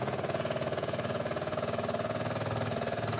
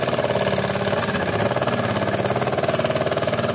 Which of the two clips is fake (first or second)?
first